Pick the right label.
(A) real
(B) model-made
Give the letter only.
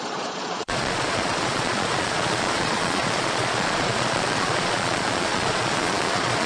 B